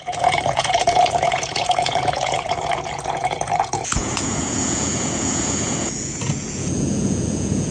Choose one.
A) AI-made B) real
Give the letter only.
A